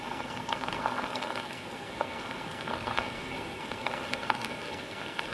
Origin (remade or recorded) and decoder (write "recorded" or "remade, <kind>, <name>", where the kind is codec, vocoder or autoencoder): remade, codec, SNAC